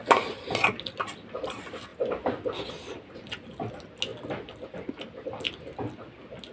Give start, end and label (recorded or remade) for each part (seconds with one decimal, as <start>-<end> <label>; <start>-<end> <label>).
0.0-6.5 recorded